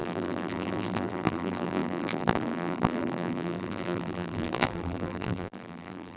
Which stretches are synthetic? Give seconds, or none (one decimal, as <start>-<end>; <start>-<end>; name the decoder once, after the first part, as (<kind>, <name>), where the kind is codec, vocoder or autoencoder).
0.0-6.2 (vocoder, BigVGAN v2)

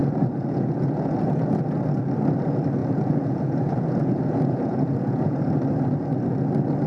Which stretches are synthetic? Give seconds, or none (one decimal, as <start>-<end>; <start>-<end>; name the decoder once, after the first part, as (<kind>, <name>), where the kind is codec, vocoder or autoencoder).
0.0-1.6 (vocoder, Vocos); 2.8-5.5

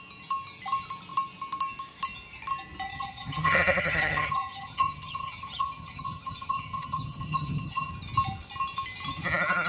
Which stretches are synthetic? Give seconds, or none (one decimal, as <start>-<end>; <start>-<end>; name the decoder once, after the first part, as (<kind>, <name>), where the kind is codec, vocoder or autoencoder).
2.9-7.9 (vocoder, HiFi-GAN)

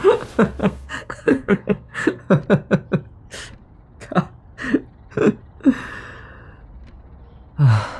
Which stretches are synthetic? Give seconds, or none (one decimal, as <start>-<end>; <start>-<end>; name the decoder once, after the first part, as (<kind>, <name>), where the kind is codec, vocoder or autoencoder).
0.6-2.2 (codec, SNAC)